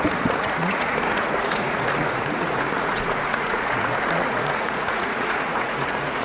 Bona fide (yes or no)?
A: no